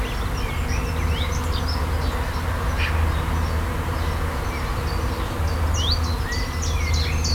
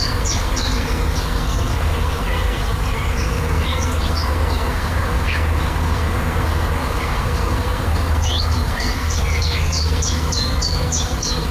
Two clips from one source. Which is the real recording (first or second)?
first